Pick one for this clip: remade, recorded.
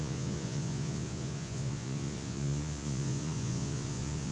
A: remade